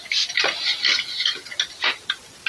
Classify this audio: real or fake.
real